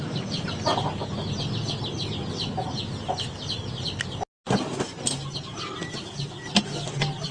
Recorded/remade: recorded